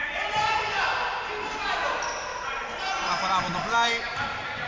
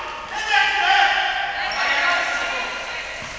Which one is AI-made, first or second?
first